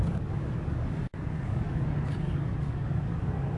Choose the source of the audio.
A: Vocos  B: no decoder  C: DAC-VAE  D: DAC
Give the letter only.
D